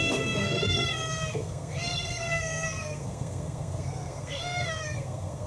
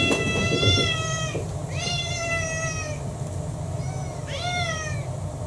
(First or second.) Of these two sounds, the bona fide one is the second